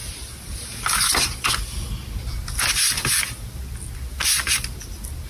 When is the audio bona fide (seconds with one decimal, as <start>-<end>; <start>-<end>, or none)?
0.0-5.3